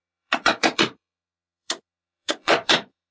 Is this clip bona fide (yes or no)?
no